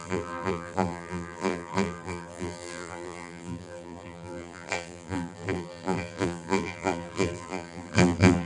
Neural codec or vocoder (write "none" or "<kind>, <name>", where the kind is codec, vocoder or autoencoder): vocoder, BigVGAN v2